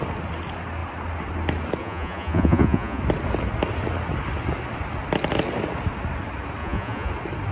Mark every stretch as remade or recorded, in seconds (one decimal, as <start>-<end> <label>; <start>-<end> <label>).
0.0-1.8 recorded; 1.8-3.0 remade; 3.0-6.6 recorded; 6.6-7.1 remade; 7.1-7.5 recorded